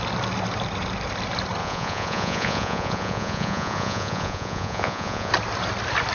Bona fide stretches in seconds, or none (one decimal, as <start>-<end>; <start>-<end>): 0.0-1.6; 5.3-6.1